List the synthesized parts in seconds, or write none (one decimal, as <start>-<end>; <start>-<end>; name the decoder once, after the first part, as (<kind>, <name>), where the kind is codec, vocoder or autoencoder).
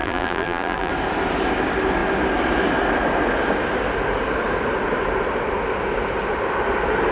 0.0-0.9 (vocoder, BigVGAN v2)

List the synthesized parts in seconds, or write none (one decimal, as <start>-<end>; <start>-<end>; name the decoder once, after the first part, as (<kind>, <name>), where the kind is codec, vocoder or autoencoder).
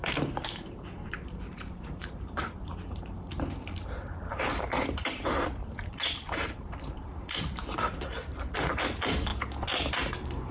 0.0-9.3 (vocoder, BigVGAN v2); 9.9-10.5